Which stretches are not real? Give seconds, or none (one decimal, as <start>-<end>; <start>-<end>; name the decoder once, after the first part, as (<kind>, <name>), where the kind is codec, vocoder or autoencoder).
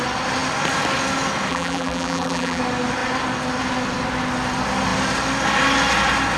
1.5-2.6 (vocoder, BigVGAN v2)